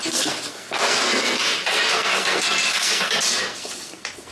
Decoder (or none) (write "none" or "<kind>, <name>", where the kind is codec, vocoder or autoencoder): codec, SNAC